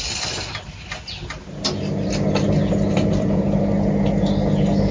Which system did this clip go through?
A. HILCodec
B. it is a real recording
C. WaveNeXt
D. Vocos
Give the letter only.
B